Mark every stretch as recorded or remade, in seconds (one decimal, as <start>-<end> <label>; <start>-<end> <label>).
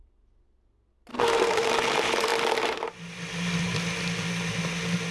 0.0-1.1 recorded; 1.1-1.7 remade; 1.7-5.1 recorded